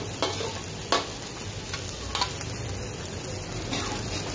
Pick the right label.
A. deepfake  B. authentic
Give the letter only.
B